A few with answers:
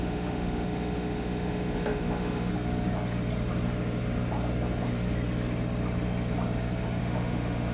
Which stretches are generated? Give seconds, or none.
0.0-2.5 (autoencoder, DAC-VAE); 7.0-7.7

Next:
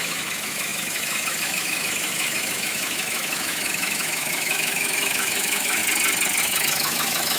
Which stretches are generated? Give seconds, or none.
0.0-5.8 (autoencoder, DAC-VAE); 6.4-7.4

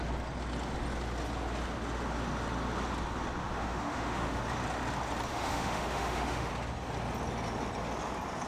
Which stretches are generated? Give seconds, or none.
3.4-4.4 (autoencoder, DAC-VAE); 5.3-6.5

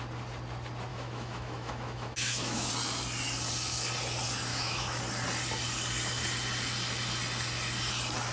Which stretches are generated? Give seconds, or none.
0.9-2.7 (autoencoder, DAC-VAE); 4.5-5.0

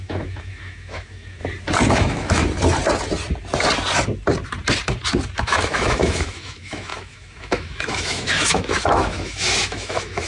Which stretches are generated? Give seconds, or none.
0.0-1.4 (autoencoder, DAC-VAE); 1.9-2.4; 5.4-10.3